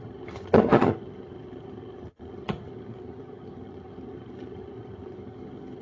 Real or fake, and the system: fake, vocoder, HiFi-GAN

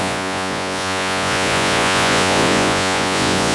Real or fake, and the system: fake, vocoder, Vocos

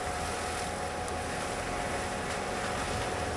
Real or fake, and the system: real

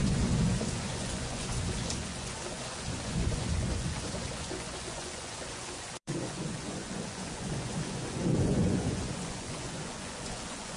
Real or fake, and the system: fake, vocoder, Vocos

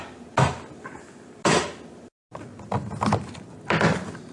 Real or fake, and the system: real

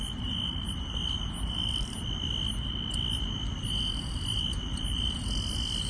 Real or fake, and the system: real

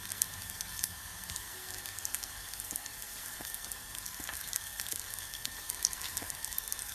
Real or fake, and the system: fake, codec, SNAC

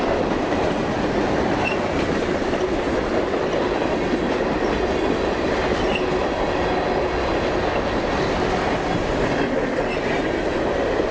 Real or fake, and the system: real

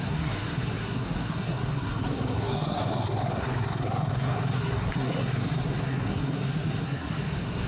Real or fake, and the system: fake, codec, SNAC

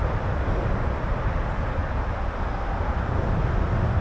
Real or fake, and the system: real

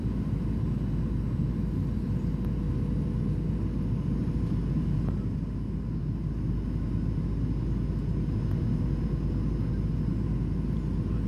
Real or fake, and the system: real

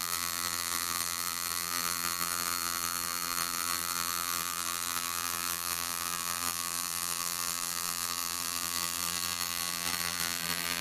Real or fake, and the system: fake, vocoder, BigVGAN v2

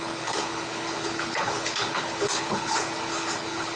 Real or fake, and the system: fake, codec, HILCodec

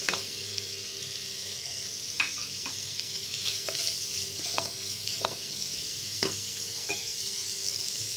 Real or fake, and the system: fake, codec, SNAC